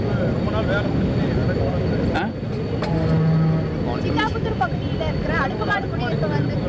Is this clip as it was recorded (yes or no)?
yes